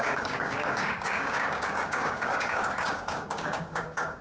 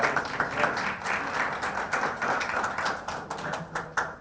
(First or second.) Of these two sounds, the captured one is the second